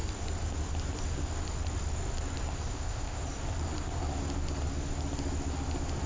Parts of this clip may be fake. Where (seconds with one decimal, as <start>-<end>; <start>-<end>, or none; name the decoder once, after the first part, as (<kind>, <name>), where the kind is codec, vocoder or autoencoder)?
2.7-3.2 (codec, ZipCodec)